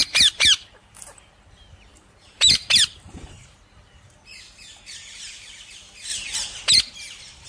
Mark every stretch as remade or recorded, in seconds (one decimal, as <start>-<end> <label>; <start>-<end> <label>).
0.0-4.1 remade; 4.1-6.1 recorded; 6.1-6.7 remade; 6.7-7.5 recorded